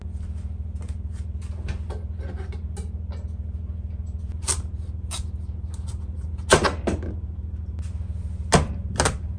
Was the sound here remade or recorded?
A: recorded